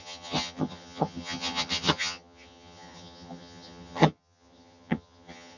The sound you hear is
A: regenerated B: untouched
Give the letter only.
A